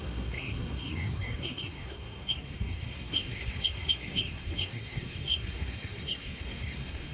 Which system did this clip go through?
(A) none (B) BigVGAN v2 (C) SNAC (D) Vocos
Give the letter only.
C